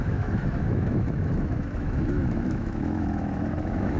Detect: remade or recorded remade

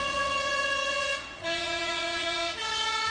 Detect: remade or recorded remade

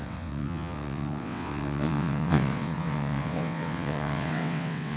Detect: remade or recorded remade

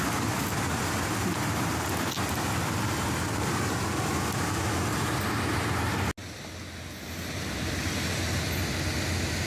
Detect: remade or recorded recorded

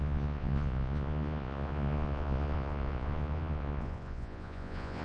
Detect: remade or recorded remade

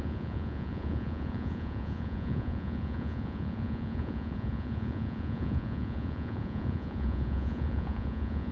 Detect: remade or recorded remade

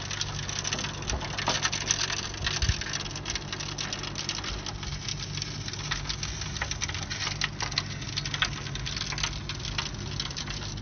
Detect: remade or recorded recorded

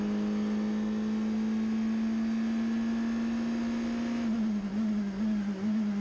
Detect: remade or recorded recorded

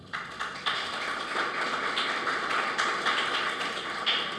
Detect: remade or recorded recorded